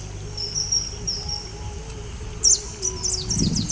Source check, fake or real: real